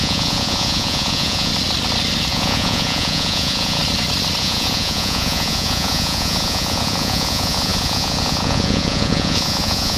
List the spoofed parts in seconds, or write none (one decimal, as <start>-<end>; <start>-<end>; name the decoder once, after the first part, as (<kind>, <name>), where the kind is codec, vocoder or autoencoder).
0.0-1.5 (vocoder, Vocos); 2.3-3.8; 4.4-10.0